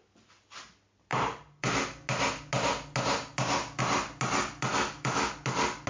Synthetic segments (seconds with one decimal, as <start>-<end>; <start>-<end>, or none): 4.7-5.3